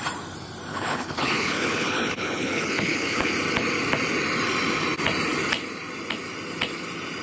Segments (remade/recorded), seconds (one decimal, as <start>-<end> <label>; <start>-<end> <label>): 0.0-0.7 recorded; 0.7-3.3 remade; 3.3-7.2 recorded